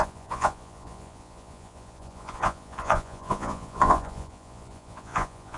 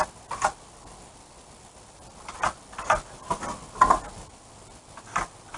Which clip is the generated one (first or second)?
first